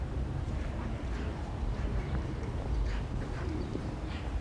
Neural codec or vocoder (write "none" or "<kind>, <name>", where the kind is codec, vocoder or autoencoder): vocoder, BigVGAN v2